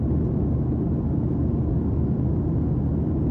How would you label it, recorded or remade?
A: recorded